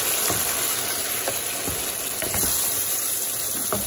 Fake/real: real